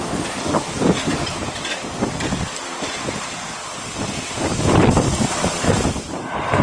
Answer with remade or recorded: recorded